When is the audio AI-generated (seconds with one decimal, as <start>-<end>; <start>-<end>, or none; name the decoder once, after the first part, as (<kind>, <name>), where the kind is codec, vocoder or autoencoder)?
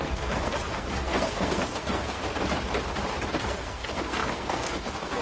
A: 0.0-2.2 (codec, SNAC); 3.4-5.2